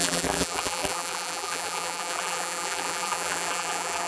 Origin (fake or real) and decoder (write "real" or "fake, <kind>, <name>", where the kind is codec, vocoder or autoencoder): fake, vocoder, BigVGAN v2